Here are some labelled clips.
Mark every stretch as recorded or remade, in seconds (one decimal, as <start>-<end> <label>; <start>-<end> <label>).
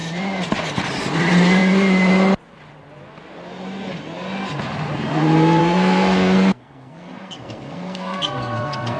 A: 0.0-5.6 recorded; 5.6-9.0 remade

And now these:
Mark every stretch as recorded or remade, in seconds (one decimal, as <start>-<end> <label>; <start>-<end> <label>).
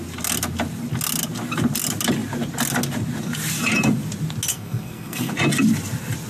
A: 0.0-4.5 recorded; 4.5-5.3 remade; 5.3-6.3 recorded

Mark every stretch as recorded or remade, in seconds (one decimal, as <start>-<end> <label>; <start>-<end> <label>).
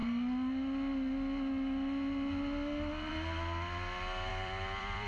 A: 0.0-4.3 recorded; 4.3-5.1 remade